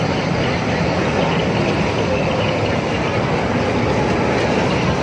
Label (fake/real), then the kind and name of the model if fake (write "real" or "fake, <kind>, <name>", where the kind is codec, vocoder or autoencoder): real